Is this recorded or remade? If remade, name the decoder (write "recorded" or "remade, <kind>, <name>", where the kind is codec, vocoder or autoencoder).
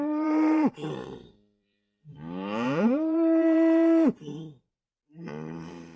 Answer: remade, vocoder, BigVGAN v2